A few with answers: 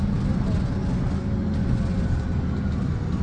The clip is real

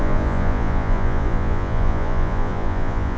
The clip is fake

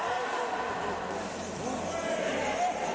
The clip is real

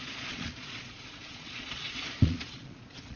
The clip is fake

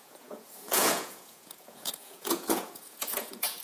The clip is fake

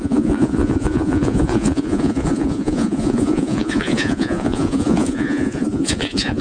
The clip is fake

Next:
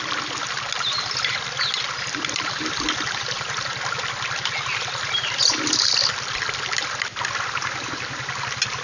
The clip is real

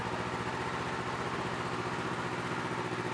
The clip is real